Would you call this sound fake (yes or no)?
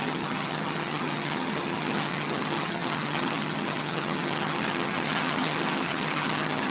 yes